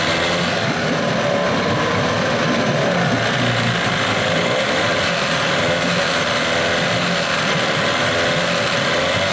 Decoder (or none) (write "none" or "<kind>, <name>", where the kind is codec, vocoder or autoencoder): none